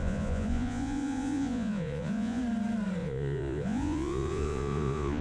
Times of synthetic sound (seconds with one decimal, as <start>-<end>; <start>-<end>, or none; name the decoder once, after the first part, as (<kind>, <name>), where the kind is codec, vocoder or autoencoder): 0.0-2.4 (vocoder, Vocos); 3.0-5.2